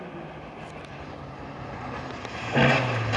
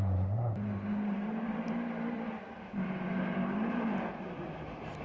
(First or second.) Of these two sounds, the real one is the first